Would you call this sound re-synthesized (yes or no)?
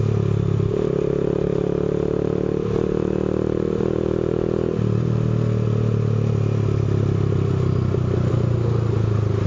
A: no